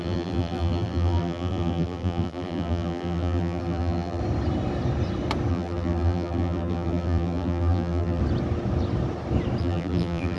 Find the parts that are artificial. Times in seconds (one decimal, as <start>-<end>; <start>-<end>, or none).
0.0-4.2; 5.5-8.2; 9.6-10.4